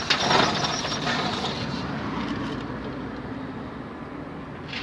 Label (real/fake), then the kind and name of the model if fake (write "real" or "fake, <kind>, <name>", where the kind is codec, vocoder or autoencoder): real